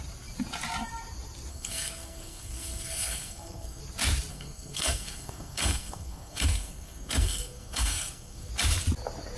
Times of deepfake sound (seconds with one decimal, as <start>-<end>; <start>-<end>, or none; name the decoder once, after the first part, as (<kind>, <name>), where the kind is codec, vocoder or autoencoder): 1.5-3.8 (codec, SNAC); 4.3-8.5